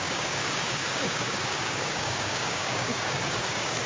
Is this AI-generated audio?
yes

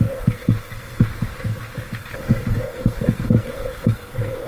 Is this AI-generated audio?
yes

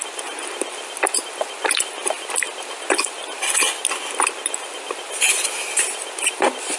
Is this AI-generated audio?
no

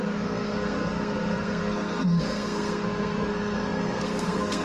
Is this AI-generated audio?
yes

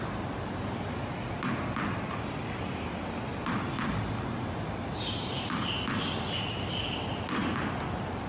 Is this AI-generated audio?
no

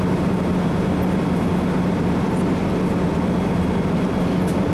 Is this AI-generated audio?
no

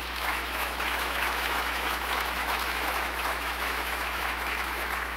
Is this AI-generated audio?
yes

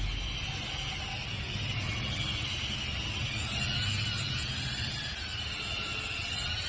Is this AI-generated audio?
no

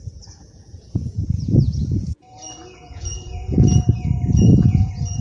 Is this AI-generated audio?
yes